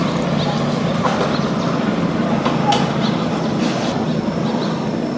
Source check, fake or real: real